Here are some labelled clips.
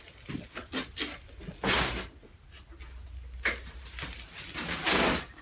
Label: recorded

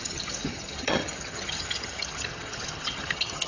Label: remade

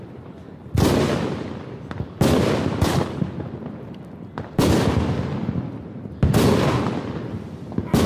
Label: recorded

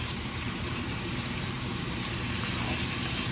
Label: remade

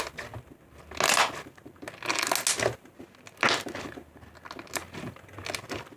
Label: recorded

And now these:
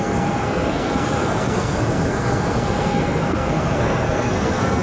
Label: remade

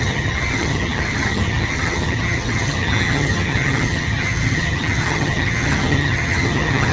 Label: remade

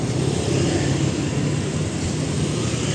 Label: recorded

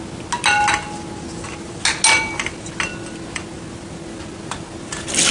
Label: recorded